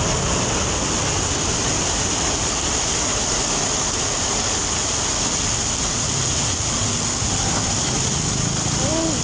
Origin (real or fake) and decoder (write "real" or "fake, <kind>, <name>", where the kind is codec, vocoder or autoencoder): real